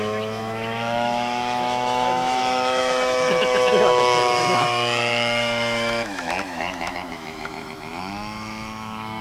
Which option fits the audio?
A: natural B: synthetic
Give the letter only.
B